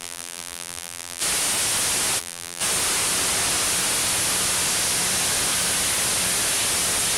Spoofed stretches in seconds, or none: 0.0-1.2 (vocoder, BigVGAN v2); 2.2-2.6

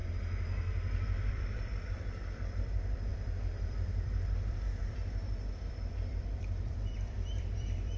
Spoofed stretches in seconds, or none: 1.3-8.0 (vocoder, BigVGAN v2)

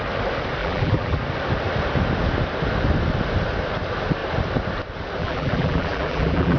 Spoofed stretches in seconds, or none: 0.6-1.2 (vocoder, BigVGAN v2); 5.2-6.6

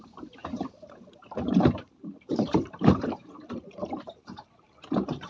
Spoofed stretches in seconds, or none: 0.0-5.3 (vocoder, BigVGAN v2)

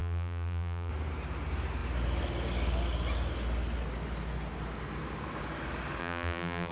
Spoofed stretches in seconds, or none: 0.0-0.9 (vocoder, BigVGAN v2); 6.0-6.7